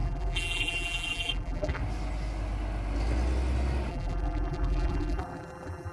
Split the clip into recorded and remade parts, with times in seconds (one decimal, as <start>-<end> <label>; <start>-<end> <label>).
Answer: 0.0-1.8 remade; 1.8-3.9 recorded; 3.9-5.9 remade